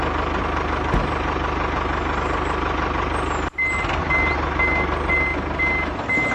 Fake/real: real